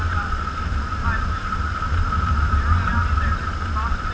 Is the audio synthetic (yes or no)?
no